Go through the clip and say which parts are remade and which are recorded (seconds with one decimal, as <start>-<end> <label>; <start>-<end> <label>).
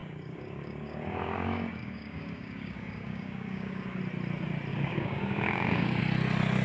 0.0-4.0 remade; 4.0-4.7 recorded; 4.7-6.0 remade; 6.0-6.6 recorded